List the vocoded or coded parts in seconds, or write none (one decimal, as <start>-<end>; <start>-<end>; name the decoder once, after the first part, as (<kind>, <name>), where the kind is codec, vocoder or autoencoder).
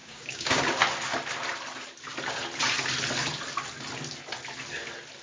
0.0-0.6 (codec, DAC)